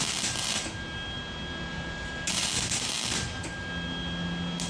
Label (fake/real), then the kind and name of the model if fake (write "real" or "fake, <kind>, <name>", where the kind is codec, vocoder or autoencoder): real